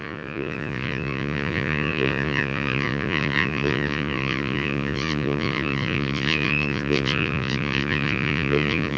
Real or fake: fake